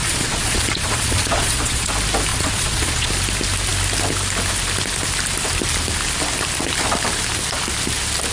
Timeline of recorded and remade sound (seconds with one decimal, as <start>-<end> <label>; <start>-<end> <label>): 0.0-1.9 remade; 1.9-2.3 recorded; 2.3-3.1 remade; 3.1-8.3 recorded